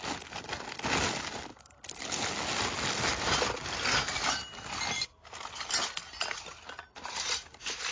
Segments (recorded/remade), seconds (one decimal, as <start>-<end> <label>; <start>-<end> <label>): 0.0-7.9 recorded